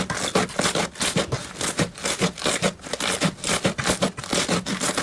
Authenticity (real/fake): real